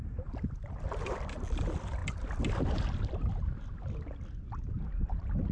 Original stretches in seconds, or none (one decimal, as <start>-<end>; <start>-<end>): 0.0-5.5